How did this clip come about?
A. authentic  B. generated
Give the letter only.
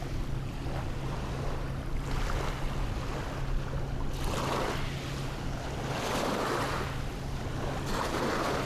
A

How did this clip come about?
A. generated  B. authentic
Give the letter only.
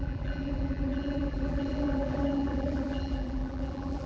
A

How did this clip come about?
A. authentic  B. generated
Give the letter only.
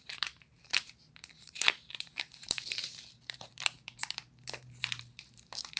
B